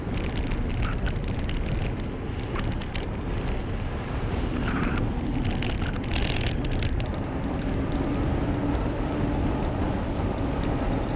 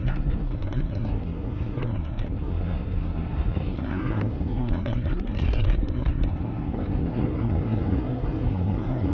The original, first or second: first